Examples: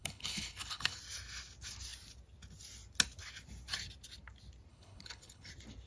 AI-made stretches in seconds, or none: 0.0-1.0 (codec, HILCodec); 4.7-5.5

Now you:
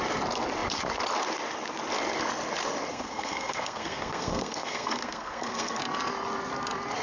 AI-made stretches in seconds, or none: 2.9-5.8 (codec, SNAC)

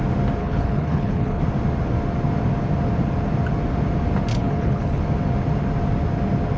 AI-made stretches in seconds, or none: 0.4-1.4 (codec, HILCodec); 4.3-5.0

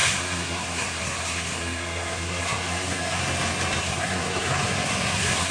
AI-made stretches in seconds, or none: 0.0-3.2 (codec, SNAC); 3.8-5.5